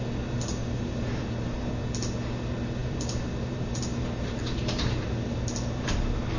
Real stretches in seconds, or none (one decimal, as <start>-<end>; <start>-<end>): 0.0-0.6; 1.8-2.8